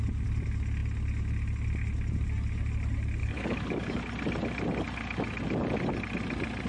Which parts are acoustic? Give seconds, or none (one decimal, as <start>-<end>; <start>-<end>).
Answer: 0.0-3.2; 4.0-6.7